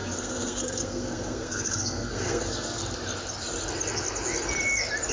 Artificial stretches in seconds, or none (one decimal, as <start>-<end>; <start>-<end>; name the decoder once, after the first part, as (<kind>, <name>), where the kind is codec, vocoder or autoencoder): 0.0-2.8 (codec, SNAC)